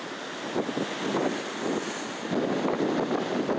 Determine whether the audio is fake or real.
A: real